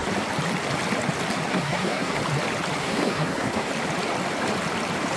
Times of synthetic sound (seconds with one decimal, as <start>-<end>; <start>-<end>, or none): 1.5-2.2; 2.8-3.7